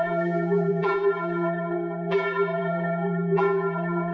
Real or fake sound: fake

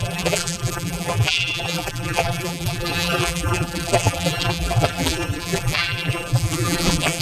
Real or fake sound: fake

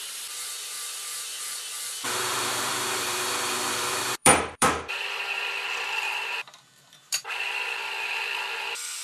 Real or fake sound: fake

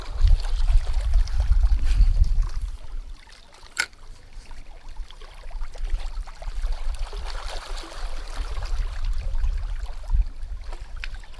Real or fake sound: fake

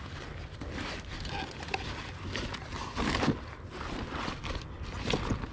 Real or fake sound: real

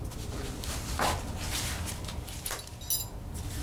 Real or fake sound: real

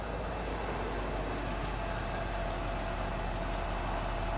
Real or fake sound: real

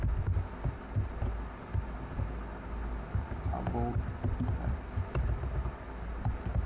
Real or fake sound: real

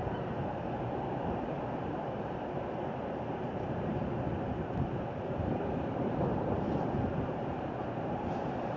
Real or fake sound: fake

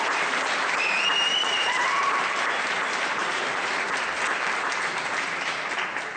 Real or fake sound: fake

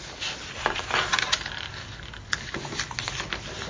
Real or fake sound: real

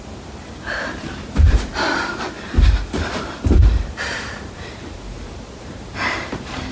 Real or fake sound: fake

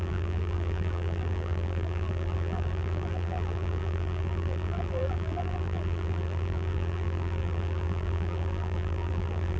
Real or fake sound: fake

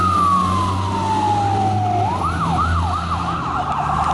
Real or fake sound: real